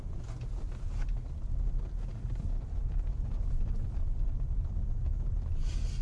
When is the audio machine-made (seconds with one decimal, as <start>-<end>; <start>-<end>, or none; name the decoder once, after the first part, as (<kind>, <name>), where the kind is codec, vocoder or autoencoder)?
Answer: none